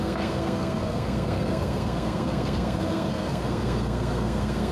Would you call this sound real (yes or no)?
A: no